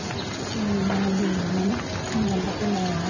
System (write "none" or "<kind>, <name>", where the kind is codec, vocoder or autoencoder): none